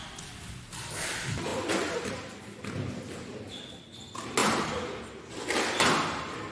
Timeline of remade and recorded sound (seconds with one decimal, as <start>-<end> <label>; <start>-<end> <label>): 0.0-6.5 recorded